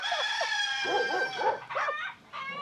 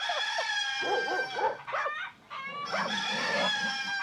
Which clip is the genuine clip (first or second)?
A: second